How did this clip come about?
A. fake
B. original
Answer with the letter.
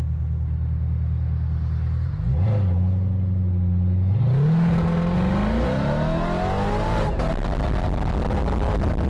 B